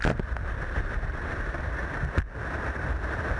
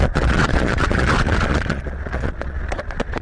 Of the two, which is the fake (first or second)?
second